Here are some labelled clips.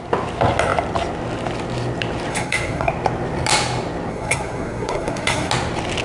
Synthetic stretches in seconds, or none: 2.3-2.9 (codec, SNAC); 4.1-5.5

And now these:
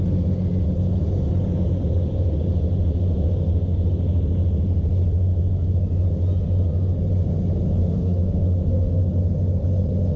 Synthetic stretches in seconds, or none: 7.8-9.0 (autoencoder, DAC-VAE)

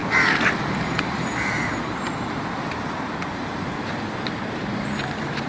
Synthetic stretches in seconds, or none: 0.0-5.5 (vocoder, BigVGAN v2)

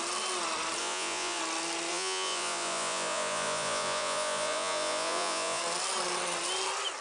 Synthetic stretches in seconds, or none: 0.8-1.4 (vocoder, Vocos); 1.9-5.6